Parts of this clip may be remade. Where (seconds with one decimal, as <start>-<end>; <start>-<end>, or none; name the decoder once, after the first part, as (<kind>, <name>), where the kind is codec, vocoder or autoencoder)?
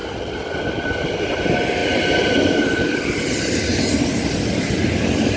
none